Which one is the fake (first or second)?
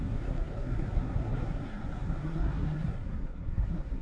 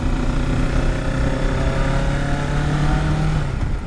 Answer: first